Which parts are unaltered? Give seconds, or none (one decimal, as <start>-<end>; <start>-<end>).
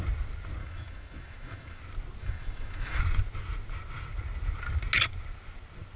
0.0-0.6; 1.8-2.2; 3.0-6.0